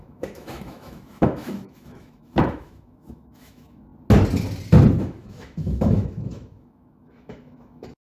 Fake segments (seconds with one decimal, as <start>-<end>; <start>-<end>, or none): 0.0-3.9; 5.0-8.1